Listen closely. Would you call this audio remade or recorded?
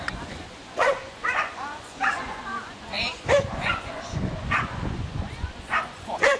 remade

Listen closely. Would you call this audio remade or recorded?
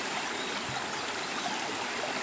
recorded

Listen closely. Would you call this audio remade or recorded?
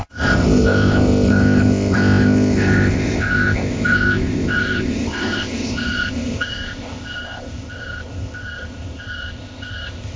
remade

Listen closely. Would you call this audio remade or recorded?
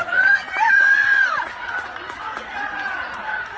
remade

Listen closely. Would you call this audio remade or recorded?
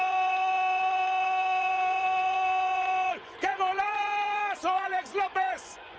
remade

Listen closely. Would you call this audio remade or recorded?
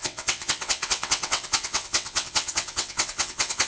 remade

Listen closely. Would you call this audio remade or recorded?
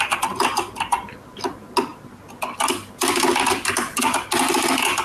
recorded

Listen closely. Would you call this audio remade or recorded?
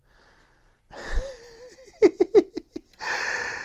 recorded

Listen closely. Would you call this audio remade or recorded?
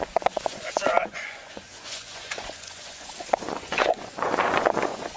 remade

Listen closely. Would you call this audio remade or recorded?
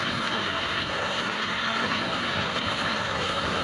remade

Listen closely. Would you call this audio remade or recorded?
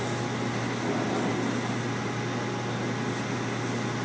recorded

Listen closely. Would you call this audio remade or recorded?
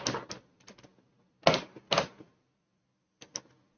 recorded